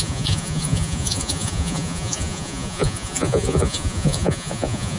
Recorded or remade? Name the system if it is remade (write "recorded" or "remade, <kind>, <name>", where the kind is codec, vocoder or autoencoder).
remade, vocoder, Vocos